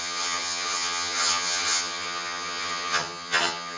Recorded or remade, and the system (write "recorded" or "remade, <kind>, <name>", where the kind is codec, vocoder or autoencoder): remade, vocoder, HiFi-GAN